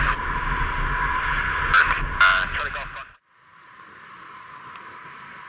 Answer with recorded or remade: recorded